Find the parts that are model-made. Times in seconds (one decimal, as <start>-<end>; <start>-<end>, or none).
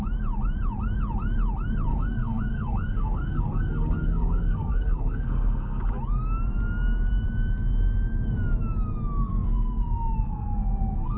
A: 1.9-5.8; 9.2-11.2